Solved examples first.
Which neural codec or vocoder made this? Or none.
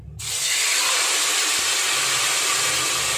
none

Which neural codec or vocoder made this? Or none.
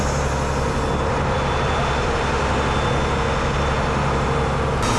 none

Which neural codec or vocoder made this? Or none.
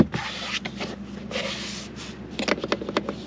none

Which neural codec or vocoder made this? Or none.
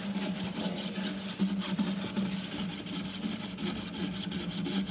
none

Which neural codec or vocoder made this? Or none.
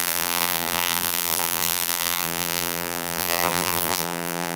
vocoder, BigVGAN v2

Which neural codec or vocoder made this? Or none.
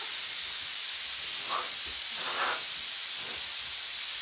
none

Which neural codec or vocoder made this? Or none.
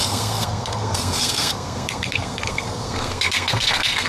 codec, SNAC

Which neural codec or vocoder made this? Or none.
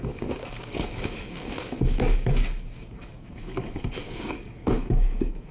codec, DAC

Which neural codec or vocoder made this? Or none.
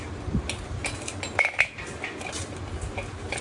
none